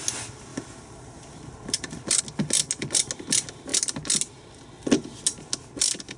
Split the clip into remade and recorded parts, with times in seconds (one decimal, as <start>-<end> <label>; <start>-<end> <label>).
0.0-0.5 recorded; 0.5-2.2 remade; 2.2-6.2 recorded